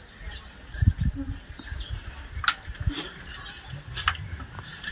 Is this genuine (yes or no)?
no